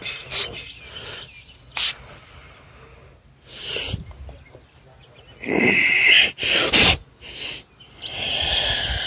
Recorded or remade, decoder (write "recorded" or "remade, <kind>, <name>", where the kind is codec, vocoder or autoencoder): recorded